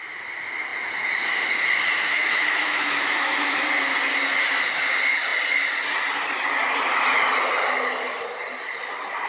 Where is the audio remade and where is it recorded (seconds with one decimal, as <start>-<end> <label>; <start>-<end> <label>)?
0.0-2.1 recorded; 2.1-3.6 remade; 3.6-9.3 recorded